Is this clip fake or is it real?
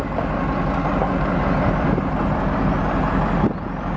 real